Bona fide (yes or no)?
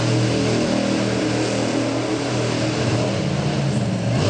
yes